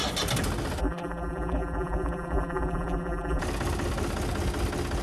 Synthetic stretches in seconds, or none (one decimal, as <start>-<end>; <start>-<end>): 0.8-3.4